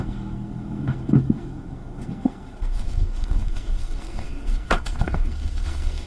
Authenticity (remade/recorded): remade